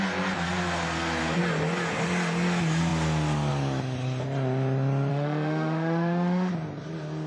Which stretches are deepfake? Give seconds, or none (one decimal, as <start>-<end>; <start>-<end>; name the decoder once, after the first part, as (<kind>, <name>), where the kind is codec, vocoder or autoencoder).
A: 5.1-6.5 (autoencoder, DAC-VAE)